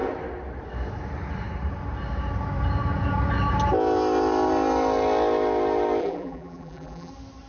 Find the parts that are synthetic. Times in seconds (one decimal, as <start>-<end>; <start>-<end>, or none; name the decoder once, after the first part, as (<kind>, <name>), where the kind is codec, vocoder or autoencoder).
6.0-7.1 (vocoder, BigVGAN v2)